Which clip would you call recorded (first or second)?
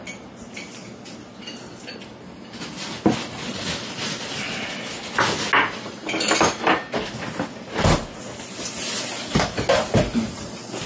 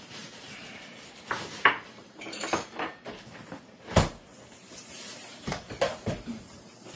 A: first